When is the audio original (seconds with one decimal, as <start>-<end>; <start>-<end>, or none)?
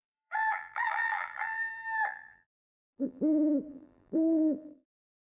3.2-3.7